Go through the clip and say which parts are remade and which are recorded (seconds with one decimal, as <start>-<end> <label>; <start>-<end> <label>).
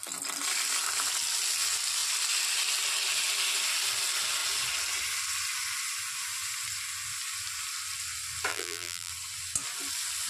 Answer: 0.0-8.5 recorded; 8.5-9.1 remade; 9.1-10.3 recorded